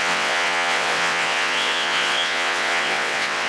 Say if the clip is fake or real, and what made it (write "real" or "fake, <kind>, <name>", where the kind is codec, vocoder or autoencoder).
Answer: fake, vocoder, WaveNeXt